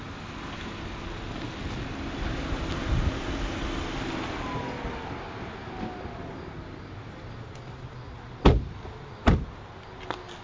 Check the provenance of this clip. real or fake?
real